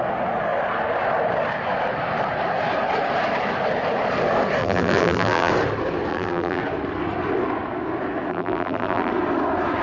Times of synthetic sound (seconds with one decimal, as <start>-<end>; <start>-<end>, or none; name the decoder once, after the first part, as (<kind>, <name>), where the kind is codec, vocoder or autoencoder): 4.6-5.5 (vocoder, BigVGAN v2); 6.1-6.6; 8.3-9.1